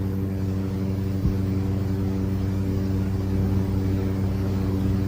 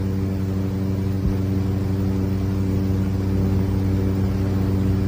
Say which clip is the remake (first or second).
first